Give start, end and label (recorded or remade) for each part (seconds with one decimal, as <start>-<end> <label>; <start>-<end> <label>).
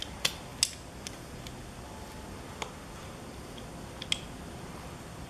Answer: 0.0-5.3 recorded